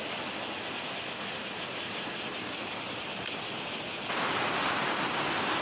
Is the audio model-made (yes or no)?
no